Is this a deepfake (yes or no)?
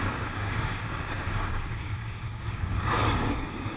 yes